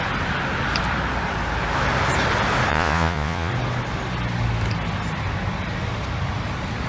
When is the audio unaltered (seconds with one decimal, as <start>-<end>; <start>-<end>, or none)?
0.0-2.7; 3.5-6.9